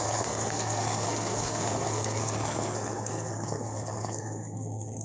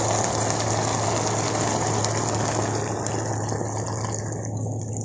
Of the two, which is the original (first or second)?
second